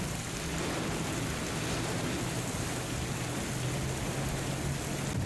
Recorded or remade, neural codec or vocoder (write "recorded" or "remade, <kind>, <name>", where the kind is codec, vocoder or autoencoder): recorded